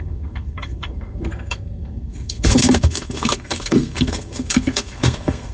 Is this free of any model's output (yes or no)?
no